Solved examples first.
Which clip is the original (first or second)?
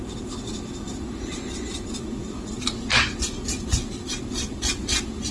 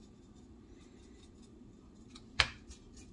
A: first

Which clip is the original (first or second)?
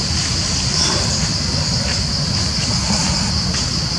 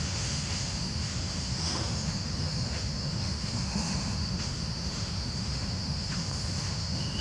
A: first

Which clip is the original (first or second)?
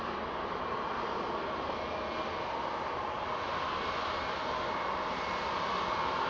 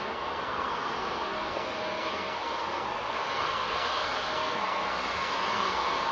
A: first